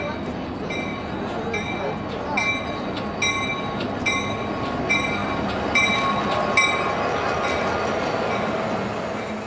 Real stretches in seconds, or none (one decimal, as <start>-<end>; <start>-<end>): 0.0-9.5